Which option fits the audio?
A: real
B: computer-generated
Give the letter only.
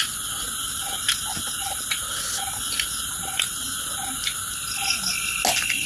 A